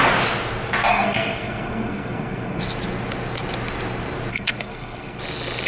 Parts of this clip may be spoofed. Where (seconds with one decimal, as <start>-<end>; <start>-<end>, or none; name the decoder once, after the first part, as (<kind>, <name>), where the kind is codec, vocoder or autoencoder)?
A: 0.9-2.6 (codec, SNAC); 4.3-5.2